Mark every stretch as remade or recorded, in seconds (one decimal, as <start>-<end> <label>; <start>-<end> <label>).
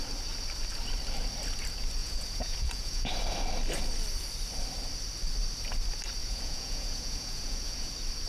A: 0.0-2.0 recorded; 2.0-3.1 remade; 3.1-6.2 recorded; 6.2-7.9 remade; 7.9-8.3 recorded